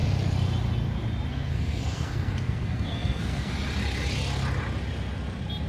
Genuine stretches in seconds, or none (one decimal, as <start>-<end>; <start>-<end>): 0.0-1.3; 3.5-5.7